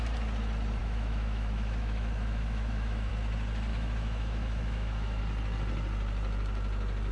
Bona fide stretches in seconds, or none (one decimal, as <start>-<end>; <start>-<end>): 0.0-0.8; 3.1-3.7; 5.2-7.1